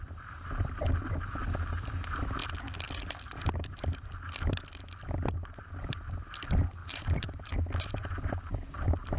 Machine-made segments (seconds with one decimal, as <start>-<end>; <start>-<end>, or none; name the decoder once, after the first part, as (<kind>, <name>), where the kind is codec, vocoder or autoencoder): 6.8-7.5 (vocoder, BigVGAN v2)